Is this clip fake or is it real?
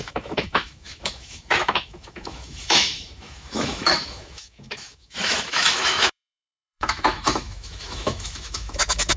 fake